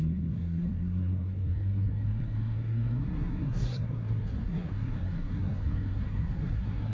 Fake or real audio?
fake